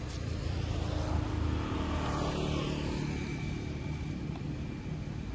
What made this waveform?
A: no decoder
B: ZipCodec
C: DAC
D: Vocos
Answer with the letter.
A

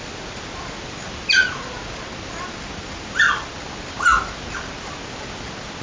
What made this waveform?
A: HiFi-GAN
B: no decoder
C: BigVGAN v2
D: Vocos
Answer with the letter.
B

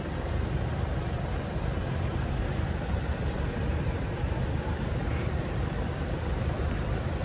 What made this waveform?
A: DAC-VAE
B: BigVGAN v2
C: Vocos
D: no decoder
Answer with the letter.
B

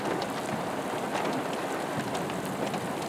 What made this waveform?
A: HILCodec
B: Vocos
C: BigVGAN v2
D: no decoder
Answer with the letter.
D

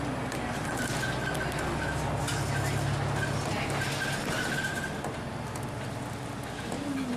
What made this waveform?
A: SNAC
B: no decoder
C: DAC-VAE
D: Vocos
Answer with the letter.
B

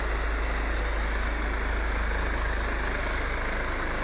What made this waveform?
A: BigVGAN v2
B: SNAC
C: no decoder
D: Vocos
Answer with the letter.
C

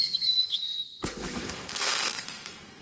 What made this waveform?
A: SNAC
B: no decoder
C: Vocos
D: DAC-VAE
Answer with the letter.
A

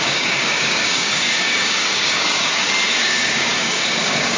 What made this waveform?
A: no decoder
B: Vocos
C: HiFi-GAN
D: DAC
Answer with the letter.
D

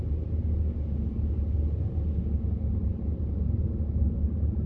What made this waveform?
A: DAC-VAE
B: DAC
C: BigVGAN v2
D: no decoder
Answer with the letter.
D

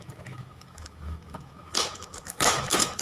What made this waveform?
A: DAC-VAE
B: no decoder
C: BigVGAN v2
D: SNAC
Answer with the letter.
A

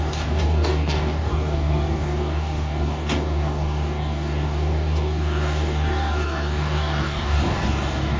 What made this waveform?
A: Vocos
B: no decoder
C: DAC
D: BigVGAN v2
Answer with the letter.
C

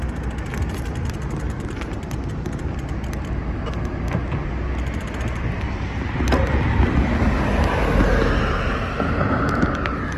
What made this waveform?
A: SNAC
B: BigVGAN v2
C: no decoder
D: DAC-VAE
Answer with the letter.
C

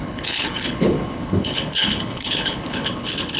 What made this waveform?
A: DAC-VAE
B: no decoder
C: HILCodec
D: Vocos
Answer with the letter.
C